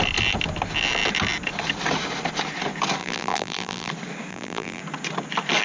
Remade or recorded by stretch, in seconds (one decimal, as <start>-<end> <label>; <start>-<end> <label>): 0.0-3.0 recorded; 3.0-3.9 remade; 3.9-4.3 recorded; 4.3-4.8 remade; 4.8-5.6 recorded